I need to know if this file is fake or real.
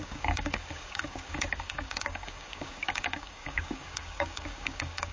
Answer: fake